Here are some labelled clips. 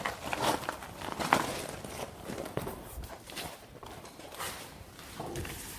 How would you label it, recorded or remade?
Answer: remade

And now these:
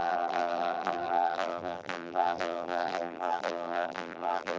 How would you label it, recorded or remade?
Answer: remade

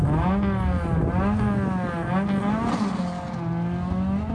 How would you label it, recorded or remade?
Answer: recorded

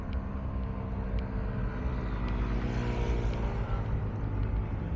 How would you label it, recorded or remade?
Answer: recorded